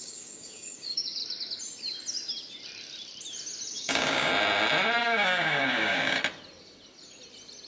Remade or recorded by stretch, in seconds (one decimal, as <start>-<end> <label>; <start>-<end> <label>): 0.0-1.2 remade; 1.2-3.7 recorded; 3.7-4.3 remade; 4.3-5.0 recorded; 5.0-6.2 remade; 6.2-7.7 recorded